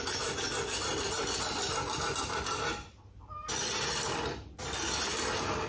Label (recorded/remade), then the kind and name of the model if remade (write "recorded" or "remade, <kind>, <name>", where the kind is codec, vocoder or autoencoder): recorded